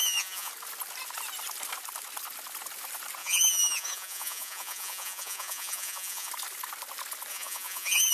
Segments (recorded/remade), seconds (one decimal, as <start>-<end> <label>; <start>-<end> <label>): 0.0-0.5 remade; 0.5-3.2 recorded; 3.2-6.3 remade; 6.3-7.3 recorded; 7.3-8.1 remade